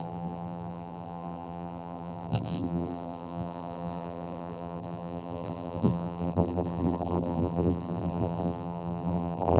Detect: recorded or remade remade